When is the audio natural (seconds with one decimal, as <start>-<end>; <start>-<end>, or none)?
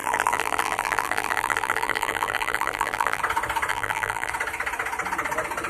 3.2-3.7; 4.3-5.7